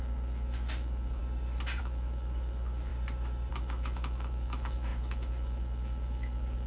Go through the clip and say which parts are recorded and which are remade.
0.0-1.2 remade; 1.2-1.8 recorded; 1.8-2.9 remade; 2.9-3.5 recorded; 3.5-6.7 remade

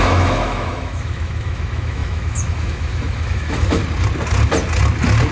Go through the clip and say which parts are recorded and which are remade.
0.0-3.8 remade; 3.8-5.3 recorded